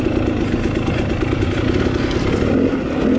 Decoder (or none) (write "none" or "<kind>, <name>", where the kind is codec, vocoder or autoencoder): none